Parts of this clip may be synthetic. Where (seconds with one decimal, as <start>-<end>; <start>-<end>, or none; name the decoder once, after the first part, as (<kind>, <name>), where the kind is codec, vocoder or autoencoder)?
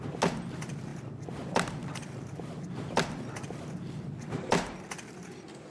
none